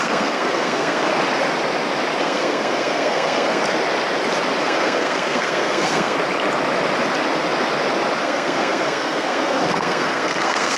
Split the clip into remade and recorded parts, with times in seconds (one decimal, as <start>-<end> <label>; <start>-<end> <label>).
0.0-1.1 remade; 1.1-2.2 recorded; 2.2-3.6 remade; 3.6-4.6 recorded; 4.6-6.2 remade; 6.2-8.2 recorded; 8.2-10.8 remade